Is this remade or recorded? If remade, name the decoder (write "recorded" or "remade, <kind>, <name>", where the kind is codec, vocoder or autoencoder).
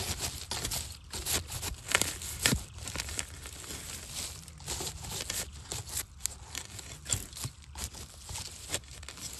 recorded